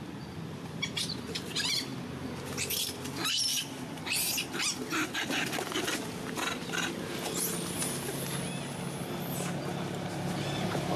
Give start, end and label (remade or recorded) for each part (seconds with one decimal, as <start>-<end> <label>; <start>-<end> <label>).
0.0-11.0 recorded